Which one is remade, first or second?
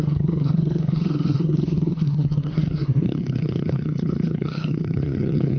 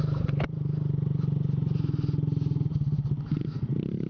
first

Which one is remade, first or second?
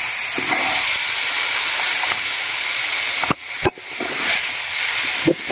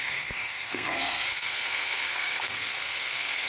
second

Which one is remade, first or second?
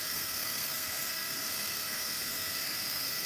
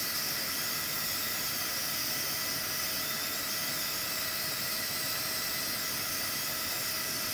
first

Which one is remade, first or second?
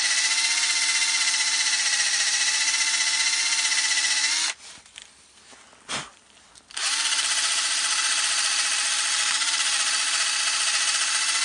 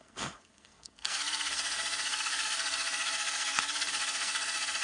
second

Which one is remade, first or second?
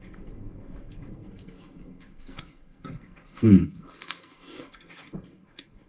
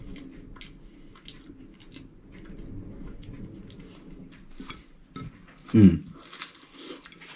first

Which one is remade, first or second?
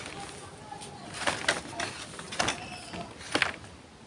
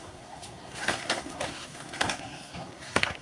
second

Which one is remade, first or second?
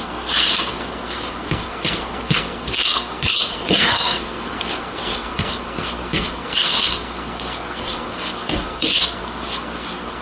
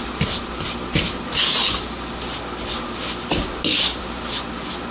first